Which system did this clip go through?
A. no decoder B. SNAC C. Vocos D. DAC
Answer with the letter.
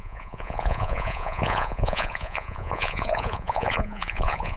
C